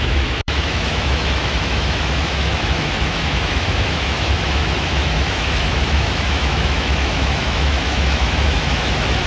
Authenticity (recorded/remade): remade